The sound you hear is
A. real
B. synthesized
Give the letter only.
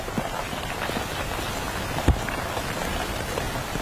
A